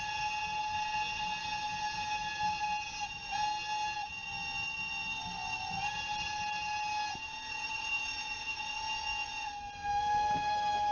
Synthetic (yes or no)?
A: no